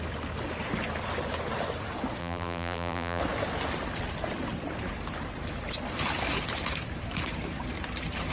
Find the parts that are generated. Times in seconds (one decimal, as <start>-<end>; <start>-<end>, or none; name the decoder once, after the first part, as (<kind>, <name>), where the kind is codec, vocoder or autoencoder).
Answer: 2.2-3.2 (vocoder, BigVGAN v2)